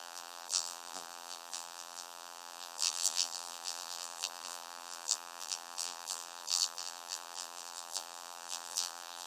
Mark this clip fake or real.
fake